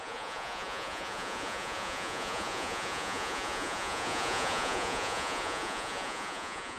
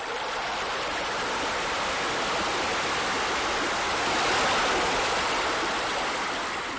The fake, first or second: first